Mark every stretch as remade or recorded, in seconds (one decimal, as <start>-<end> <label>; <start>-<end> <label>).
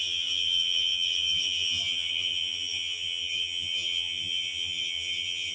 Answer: 0.0-5.5 remade